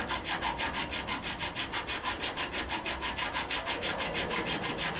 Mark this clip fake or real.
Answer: real